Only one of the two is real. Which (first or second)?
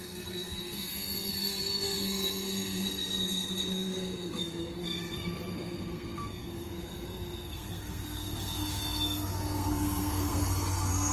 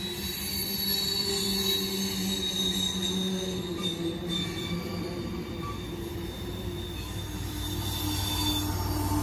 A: second